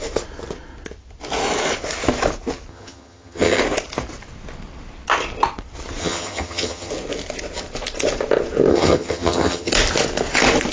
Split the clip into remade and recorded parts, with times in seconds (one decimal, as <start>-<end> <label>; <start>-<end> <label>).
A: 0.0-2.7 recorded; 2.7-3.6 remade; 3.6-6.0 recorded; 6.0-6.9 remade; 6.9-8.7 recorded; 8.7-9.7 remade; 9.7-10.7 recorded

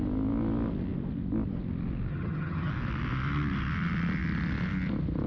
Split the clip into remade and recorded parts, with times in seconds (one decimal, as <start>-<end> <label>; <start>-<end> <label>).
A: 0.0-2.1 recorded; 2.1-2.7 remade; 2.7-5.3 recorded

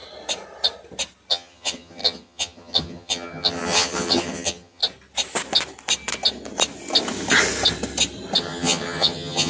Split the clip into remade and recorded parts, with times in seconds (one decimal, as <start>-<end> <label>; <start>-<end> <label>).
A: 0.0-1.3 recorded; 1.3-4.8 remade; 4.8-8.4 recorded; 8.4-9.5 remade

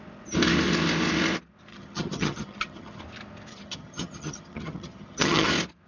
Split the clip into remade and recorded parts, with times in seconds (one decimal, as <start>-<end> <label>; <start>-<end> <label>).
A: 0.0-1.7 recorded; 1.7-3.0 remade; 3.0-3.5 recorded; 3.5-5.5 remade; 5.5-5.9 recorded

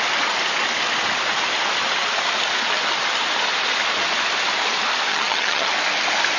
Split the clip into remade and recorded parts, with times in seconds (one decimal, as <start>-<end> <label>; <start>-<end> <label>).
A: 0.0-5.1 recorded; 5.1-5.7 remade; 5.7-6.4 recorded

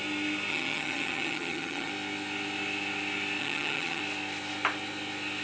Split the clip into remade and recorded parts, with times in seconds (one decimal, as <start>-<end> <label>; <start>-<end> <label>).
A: 0.0-0.5 recorded; 0.5-1.9 remade; 1.9-3.4 recorded; 3.4-4.0 remade; 4.0-5.4 recorded